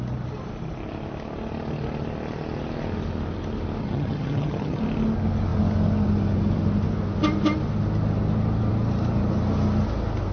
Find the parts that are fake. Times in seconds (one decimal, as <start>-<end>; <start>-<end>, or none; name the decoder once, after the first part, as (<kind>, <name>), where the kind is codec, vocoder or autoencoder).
3.8-4.8 (vocoder, HiFi-GAN)